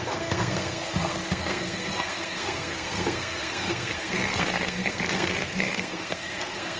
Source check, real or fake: fake